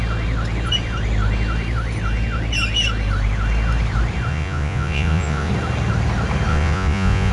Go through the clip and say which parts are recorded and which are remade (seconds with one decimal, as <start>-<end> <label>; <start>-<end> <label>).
0.0-4.3 recorded; 4.3-5.5 remade; 5.5-6.5 recorded; 6.5-7.3 remade